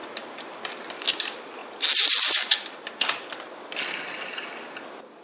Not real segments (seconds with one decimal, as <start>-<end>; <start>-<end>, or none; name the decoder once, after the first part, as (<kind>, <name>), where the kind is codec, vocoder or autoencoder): none